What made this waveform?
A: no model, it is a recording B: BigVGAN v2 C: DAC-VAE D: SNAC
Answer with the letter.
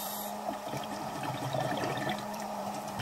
B